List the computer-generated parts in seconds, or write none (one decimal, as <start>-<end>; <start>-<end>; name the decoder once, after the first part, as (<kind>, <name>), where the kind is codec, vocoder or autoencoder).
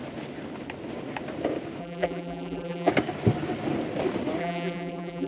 1.8-2.9 (vocoder, BigVGAN v2); 4.4-5.3